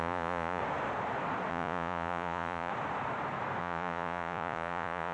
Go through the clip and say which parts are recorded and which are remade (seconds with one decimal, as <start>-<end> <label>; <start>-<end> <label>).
0.0-0.6 remade; 0.6-1.5 recorded; 1.5-2.7 remade; 2.7-3.6 recorded; 3.6-5.1 remade